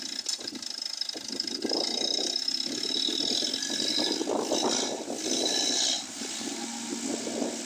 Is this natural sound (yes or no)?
yes